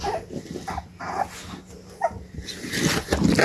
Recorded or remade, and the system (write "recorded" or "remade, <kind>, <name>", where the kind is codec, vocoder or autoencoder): recorded